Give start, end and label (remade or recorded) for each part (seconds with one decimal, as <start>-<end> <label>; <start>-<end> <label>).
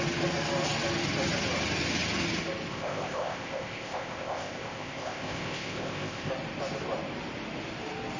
0.0-2.7 recorded; 2.7-6.3 remade; 6.3-8.2 recorded